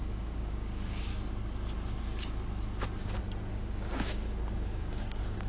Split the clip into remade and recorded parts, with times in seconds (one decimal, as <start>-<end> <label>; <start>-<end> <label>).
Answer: 0.0-1.1 remade; 1.1-3.5 recorded; 3.5-5.5 remade